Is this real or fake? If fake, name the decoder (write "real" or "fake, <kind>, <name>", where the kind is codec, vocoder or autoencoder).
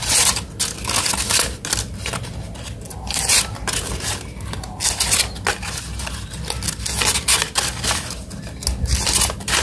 real